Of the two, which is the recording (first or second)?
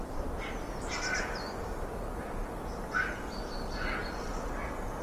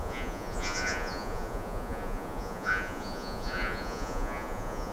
first